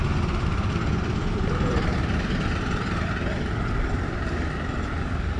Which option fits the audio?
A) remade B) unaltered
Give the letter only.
A